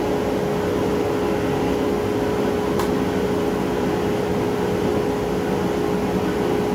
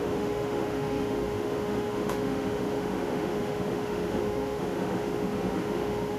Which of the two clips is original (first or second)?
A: first